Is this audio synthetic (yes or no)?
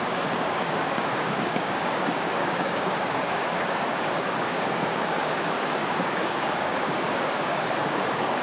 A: yes